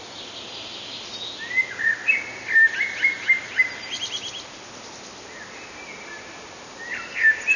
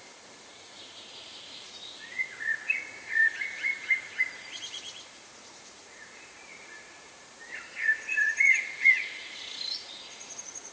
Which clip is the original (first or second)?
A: first